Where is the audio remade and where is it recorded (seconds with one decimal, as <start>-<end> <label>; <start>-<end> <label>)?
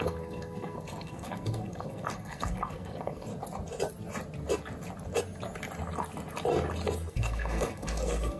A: 0.0-3.3 remade; 3.3-7.1 recorded; 7.1-8.4 remade